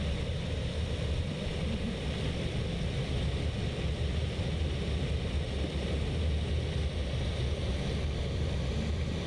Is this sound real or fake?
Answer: real